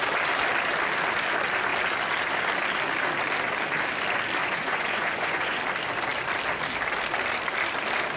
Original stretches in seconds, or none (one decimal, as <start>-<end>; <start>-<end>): 0.0-4.4; 5.6-8.2